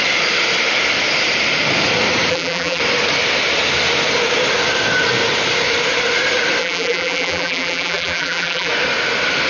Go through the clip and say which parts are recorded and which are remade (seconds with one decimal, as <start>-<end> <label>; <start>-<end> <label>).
0.0-2.3 recorded; 2.3-2.8 remade; 2.8-6.6 recorded; 6.6-8.7 remade; 8.7-9.5 recorded